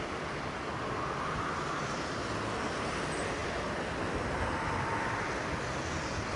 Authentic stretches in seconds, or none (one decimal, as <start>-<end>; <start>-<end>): 0.0-6.4